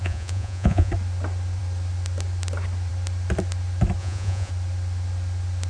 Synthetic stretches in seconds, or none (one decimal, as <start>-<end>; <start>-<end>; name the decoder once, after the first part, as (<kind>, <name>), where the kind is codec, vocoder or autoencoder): 0.0-0.9 (vocoder, Vocos); 4.0-4.5